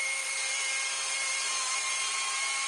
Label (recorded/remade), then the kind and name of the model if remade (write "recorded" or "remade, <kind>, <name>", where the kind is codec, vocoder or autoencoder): recorded